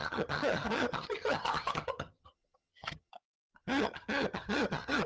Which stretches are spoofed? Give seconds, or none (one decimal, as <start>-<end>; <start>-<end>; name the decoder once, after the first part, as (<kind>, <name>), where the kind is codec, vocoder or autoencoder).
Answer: 0.0-3.1 (vocoder, HiFi-GAN); 3.6-5.1